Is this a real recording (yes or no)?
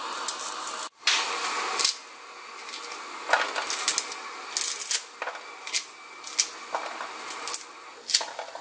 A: yes